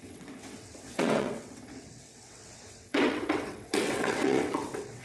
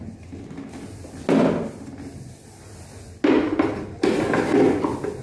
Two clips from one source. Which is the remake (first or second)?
first